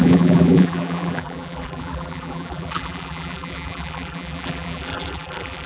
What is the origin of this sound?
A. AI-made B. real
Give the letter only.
A